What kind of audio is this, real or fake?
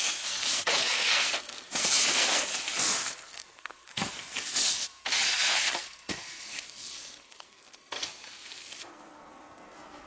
fake